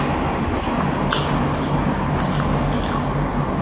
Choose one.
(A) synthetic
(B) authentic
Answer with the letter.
B